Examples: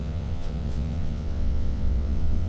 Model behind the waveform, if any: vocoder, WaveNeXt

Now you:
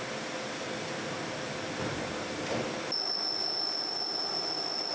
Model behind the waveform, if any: none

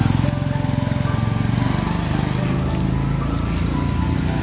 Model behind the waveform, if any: none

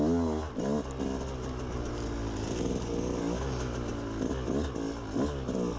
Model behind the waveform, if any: none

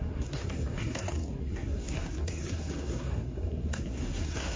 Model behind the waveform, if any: codec, SNAC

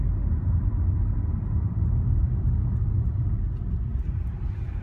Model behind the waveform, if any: none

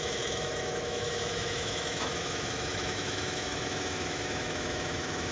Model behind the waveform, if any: autoencoder, DAC-VAE